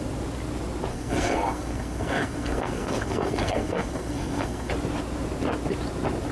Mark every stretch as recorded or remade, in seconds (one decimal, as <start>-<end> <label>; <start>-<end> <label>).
0.0-0.9 recorded; 0.9-4.7 remade; 4.7-6.3 recorded